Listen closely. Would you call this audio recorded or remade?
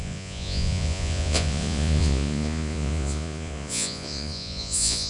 remade